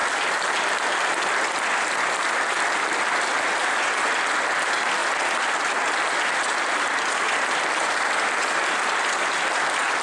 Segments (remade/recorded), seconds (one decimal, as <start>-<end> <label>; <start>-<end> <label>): 0.0-10.0 recorded